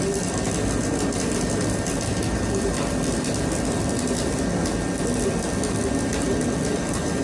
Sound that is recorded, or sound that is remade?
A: recorded